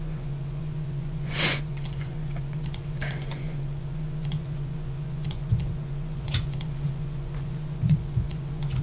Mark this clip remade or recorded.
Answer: remade